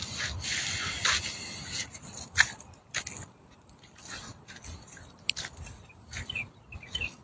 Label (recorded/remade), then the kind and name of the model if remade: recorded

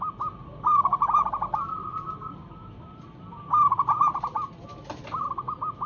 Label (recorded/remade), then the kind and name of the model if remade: recorded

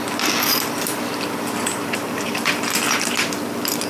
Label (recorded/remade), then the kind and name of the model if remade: remade, vocoder, BigVGAN v2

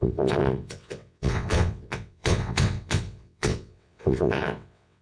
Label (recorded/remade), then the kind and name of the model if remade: remade, vocoder, WaveNeXt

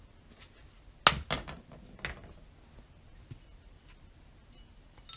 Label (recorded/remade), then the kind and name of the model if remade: recorded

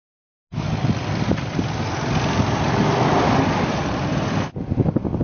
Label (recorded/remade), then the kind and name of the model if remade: recorded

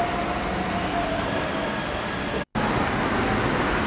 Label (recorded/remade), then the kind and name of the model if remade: recorded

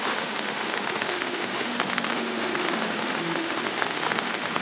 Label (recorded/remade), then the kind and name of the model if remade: remade, autoencoder, DAC-VAE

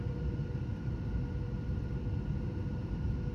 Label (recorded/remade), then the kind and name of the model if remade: recorded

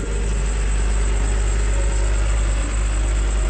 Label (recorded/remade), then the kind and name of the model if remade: recorded